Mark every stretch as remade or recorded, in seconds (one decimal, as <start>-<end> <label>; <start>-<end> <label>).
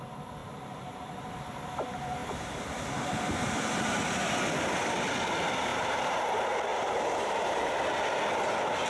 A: 0.0-0.4 recorded; 0.4-1.4 remade; 1.4-5.7 recorded; 5.7-6.2 remade; 6.2-6.7 recorded; 6.7-7.7 remade; 7.7-8.9 recorded